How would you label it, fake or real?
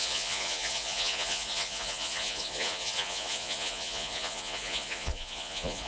fake